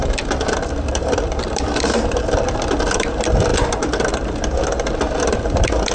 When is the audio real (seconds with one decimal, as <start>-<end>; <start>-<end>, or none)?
0.0-0.7; 3.5-4.9